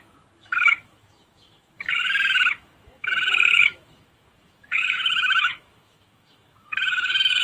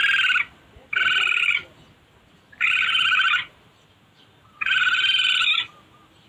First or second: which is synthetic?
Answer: first